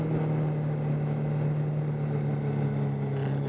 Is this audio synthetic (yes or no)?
no